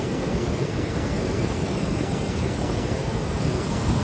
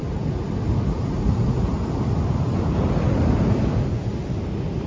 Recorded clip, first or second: second